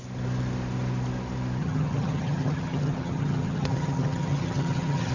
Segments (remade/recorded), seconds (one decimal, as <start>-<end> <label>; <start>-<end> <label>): 0.0-1.6 recorded; 1.6-5.1 remade